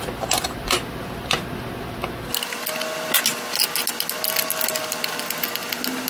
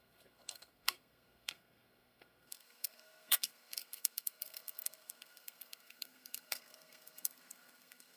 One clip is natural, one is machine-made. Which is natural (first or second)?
first